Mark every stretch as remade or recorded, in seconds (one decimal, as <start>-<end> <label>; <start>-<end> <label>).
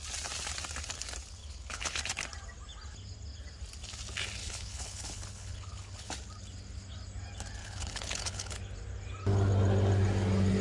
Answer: 0.0-1.4 recorded; 1.4-2.0 remade; 2.0-4.4 recorded; 4.4-6.1 remade; 6.1-7.6 recorded; 7.6-8.6 remade; 8.6-10.6 recorded